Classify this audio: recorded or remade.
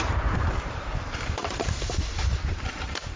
remade